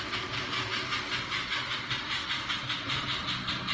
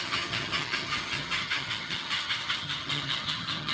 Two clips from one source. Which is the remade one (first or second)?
second